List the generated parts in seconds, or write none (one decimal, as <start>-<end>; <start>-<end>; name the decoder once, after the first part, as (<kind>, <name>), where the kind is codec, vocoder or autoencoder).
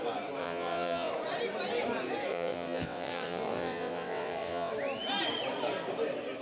0.4-1.1 (vocoder, WaveNeXt); 2.3-4.7